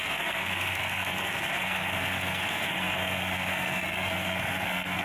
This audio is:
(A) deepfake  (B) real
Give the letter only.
A